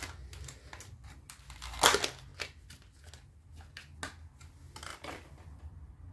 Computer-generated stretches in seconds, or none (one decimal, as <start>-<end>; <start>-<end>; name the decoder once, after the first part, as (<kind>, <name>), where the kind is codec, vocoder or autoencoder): 4.9-6.1 (vocoder, BigVGAN v2)